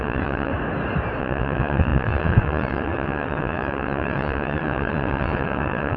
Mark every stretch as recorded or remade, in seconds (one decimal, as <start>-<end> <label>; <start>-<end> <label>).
0.0-0.5 remade; 0.5-1.2 recorded; 1.2-6.0 remade